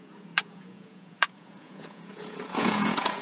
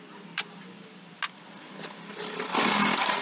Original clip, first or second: second